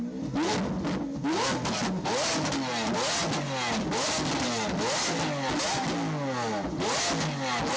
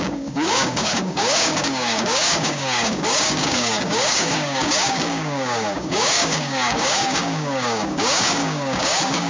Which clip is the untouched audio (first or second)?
first